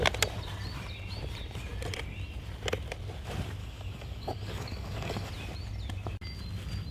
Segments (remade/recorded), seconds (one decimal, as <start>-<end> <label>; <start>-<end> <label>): 0.0-3.6 recorded; 3.6-5.3 remade; 5.3-6.9 recorded